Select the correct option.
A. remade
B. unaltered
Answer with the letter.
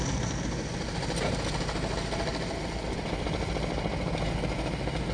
B